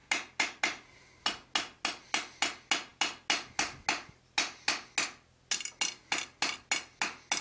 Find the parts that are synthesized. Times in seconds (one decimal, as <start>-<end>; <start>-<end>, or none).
none